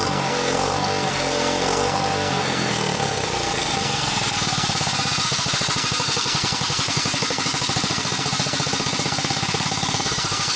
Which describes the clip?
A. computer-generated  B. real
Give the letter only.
A